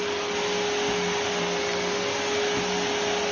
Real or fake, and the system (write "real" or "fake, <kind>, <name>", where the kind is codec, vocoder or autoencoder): real